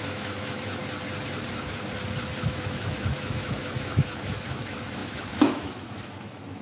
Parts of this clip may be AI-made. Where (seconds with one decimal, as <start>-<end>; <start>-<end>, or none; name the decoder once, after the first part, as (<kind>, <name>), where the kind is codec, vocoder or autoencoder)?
0.0-0.8 (autoencoder, DAC-VAE); 2.4-6.6